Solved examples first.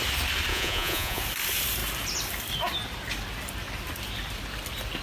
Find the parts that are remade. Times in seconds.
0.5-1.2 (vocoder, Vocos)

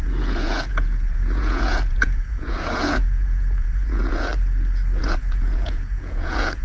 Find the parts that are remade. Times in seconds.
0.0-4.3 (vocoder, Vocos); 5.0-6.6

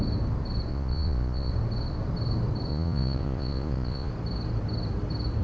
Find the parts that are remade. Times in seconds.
0.7-1.5 (vocoder, Vocos); 2.7-4.1

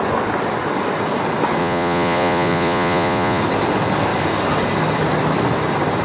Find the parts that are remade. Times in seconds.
1.6-3.4 (vocoder, Vocos)